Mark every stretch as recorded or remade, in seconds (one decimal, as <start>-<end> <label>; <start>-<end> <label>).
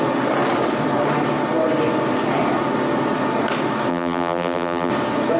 0.0-3.9 recorded; 3.9-4.9 remade; 4.9-5.4 recorded